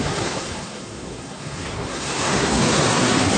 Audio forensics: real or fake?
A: fake